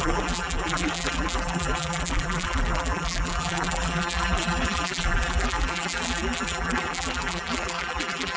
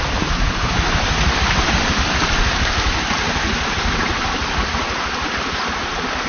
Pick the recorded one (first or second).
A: second